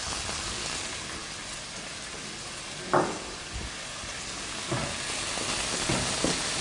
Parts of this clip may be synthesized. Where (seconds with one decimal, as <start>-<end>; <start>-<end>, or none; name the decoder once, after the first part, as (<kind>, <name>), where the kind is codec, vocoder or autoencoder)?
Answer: none

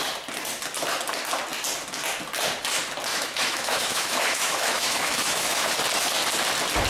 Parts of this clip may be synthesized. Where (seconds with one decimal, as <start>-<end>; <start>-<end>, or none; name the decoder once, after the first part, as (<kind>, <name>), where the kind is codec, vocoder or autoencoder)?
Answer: 3.1-5.7 (autoencoder, DAC-VAE)

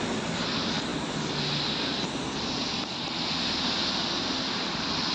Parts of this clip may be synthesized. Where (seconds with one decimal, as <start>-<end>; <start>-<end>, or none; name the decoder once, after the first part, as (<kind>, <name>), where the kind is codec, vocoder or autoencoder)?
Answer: none

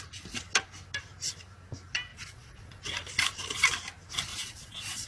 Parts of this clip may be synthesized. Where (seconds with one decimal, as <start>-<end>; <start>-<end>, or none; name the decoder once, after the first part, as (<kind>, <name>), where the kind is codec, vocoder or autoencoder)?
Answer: 2.1-2.8 (vocoder, Vocos); 4.3-5.1

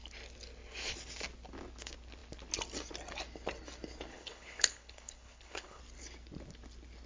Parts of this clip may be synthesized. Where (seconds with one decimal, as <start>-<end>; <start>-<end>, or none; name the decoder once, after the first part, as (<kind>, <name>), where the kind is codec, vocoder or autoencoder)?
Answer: 4.1-5.8 (codec, HILCodec)

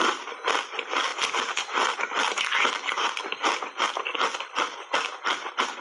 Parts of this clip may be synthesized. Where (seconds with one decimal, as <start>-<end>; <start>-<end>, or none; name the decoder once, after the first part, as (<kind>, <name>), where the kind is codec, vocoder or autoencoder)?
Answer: none